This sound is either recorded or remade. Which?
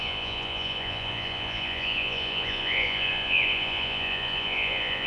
remade